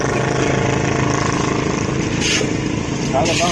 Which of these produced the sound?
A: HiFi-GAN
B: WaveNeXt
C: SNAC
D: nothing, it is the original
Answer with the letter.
D